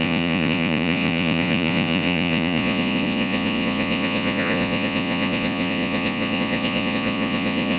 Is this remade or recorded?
remade